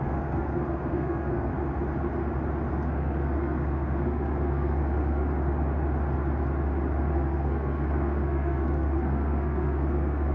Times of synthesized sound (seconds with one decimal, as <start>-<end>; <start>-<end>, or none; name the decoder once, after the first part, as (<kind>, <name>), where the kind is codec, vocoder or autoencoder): 0.0-1.5 (codec, SNAC); 2.7-5.2; 7.1-10.3